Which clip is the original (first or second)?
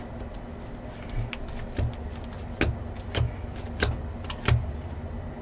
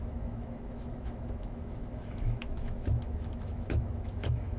first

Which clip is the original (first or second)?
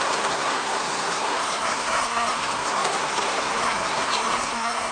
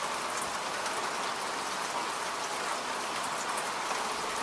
second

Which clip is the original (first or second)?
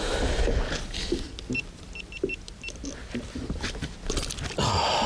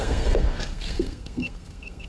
first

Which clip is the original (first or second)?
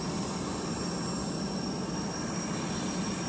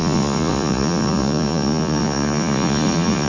first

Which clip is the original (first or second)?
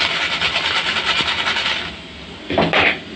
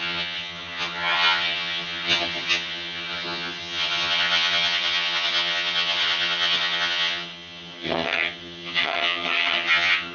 first